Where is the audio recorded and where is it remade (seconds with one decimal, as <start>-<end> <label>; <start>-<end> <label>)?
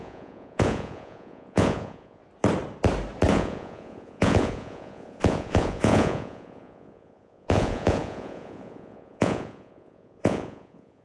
0.0-2.2 remade; 2.2-3.3 recorded; 3.3-11.0 remade